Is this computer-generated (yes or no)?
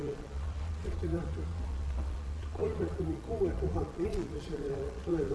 yes